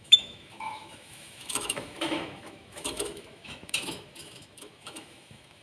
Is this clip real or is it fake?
fake